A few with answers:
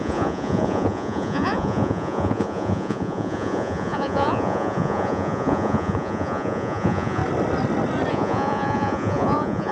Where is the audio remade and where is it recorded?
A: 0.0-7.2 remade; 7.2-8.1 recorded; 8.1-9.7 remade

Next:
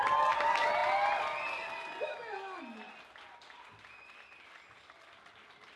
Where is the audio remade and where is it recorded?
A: 0.0-5.8 recorded

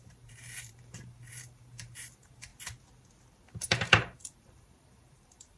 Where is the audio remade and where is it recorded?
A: 0.0-2.5 remade; 2.5-3.6 recorded; 3.6-5.6 remade

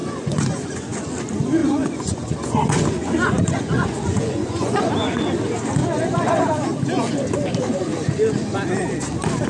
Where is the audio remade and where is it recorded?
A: 0.0-0.7 remade; 0.7-1.6 recorded; 1.6-4.9 remade; 4.9-5.8 recorded; 5.8-6.4 remade; 6.4-9.5 recorded

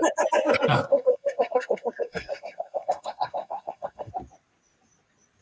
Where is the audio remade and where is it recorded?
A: 0.0-0.9 recorded; 0.9-4.1 remade; 4.1-5.4 recorded

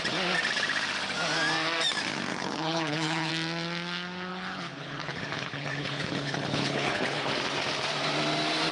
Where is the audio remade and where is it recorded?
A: 0.0-2.3 recorded; 2.3-3.3 remade; 3.3-4.3 recorded; 4.3-7.3 remade; 7.3-8.7 recorded

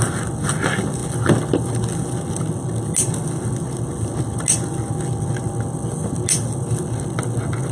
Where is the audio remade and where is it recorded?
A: 0.0-7.7 recorded

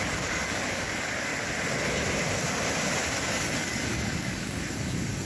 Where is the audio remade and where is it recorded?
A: 0.0-1.3 remade; 1.3-3.2 recorded; 3.2-5.2 remade